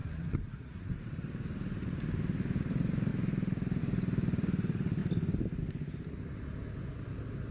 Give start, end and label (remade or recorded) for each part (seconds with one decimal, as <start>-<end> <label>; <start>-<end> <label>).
0.0-0.9 remade; 0.9-7.5 recorded